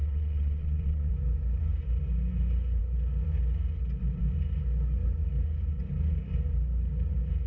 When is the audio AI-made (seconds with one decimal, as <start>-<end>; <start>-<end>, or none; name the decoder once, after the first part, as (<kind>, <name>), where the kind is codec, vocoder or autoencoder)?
0.0-1.1 (vocoder, WaveNeXt)